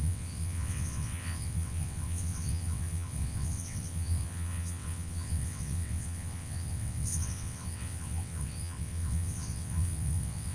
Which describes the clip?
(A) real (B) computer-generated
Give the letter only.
B